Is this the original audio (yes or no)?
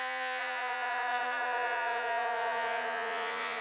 no